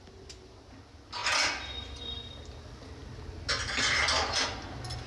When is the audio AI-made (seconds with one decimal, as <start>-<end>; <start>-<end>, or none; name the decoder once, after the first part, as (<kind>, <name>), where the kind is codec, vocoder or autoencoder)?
none